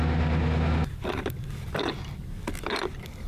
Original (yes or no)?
yes